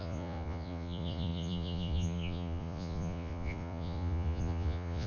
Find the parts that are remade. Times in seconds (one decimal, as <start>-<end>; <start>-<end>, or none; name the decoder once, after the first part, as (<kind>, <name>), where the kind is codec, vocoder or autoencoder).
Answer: 0.0-5.1 (vocoder, Vocos)